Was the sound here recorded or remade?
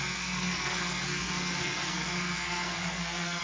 remade